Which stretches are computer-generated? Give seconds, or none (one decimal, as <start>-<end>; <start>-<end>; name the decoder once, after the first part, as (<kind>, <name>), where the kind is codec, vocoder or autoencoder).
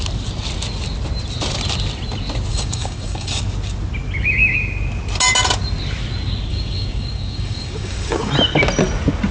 2.5-3.4 (codec, DAC); 6.5-8.3